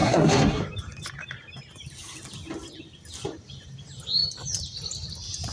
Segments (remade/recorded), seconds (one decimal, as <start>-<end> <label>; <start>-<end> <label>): 0.0-0.6 remade; 0.6-5.5 recorded